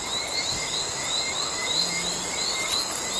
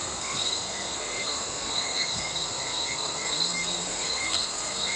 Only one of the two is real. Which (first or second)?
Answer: first